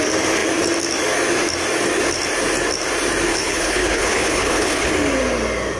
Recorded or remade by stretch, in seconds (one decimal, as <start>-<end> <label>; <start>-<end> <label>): 0.0-3.3 recorded; 3.3-4.9 remade; 4.9-5.8 recorded